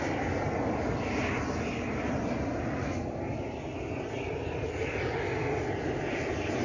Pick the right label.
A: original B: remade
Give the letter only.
A